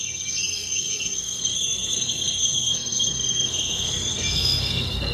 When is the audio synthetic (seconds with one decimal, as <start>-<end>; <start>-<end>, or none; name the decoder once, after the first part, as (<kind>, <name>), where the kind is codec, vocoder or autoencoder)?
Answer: 0.0-5.1 (codec, SNAC)

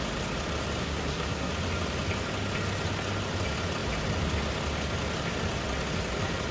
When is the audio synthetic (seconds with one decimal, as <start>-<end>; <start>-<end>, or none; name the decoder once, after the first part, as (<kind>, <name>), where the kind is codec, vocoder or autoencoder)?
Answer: 0.8-1.5 (codec, SNAC)